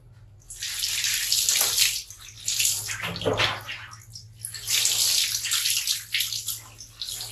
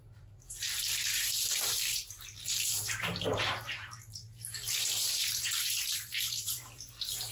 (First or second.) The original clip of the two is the first